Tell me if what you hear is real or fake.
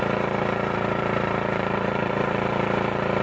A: fake